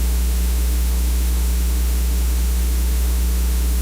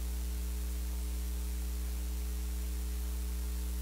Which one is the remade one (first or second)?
first